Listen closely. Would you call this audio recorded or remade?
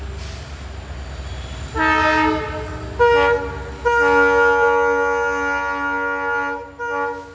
recorded